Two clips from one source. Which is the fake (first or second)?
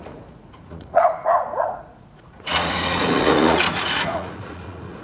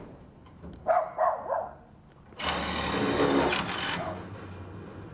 first